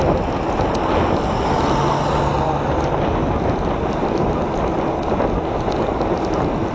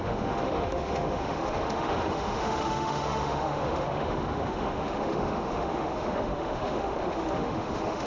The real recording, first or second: first